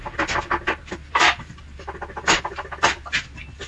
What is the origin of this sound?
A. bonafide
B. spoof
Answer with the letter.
B